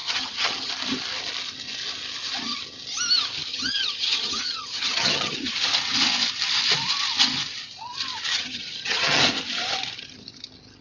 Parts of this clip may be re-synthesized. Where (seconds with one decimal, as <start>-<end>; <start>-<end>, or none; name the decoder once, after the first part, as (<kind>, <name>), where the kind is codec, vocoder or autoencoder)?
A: 0.0-0.7 (vocoder, HiFi-GAN); 3.5-5.5; 8.3-9.2